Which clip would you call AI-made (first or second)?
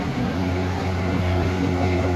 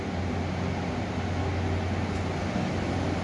first